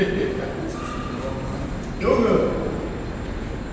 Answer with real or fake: real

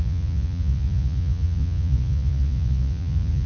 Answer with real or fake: fake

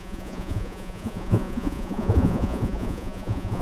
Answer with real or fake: fake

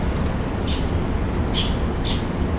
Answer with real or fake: real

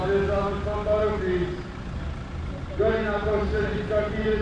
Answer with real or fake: real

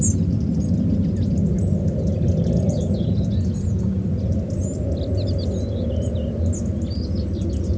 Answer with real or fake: real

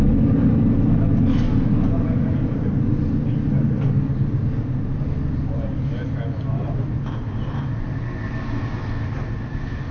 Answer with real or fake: real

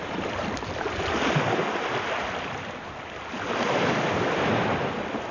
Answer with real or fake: real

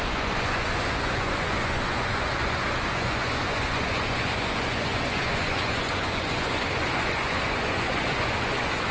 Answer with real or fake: fake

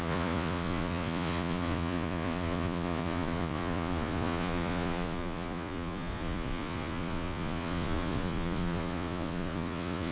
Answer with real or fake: fake